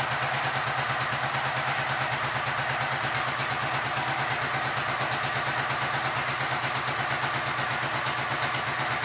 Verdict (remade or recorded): recorded